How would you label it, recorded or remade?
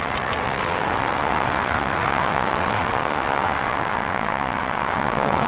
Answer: remade